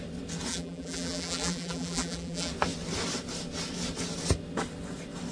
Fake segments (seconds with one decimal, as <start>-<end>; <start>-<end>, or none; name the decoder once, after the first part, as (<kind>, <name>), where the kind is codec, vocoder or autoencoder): 0.5-2.5 (vocoder, BigVGAN v2)